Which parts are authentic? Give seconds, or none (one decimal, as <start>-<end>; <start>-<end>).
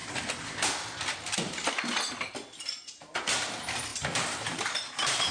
0.0-3.9